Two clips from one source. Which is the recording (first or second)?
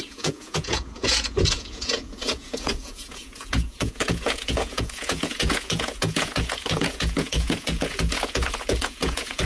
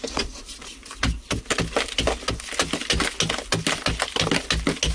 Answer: second